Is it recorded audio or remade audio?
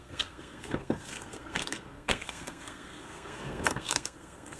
remade